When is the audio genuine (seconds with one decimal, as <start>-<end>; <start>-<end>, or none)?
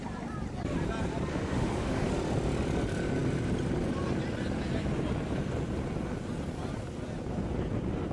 0.0-1.3; 2.1-8.1